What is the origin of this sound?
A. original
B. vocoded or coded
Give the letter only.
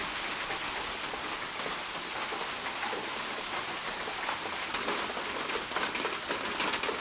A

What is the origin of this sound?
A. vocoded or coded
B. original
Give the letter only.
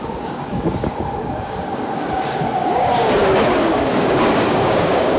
A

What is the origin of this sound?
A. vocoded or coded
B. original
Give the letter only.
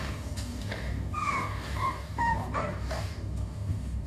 A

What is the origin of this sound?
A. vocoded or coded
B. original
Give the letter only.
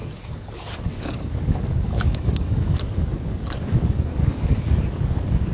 A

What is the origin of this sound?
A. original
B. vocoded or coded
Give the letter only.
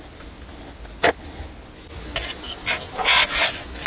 A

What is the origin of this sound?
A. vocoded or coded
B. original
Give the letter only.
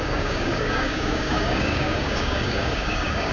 A